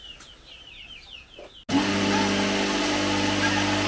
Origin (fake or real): real